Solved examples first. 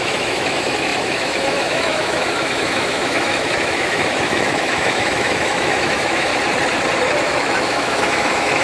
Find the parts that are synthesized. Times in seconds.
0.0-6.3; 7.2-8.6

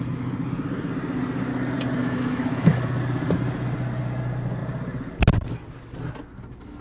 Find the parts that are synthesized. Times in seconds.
2.0-2.9

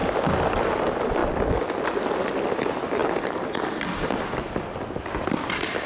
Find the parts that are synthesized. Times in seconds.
none

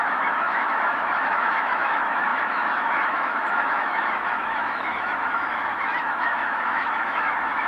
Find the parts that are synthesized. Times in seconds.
0.0-7.7

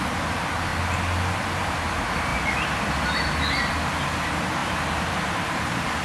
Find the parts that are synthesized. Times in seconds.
none

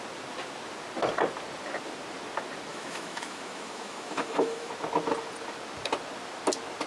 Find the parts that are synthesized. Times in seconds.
2.7-4.7

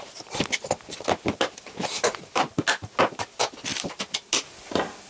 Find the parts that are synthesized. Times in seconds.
none

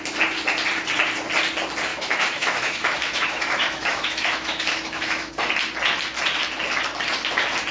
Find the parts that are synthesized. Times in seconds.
1.9-5.3